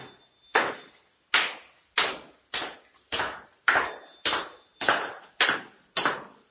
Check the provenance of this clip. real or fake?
real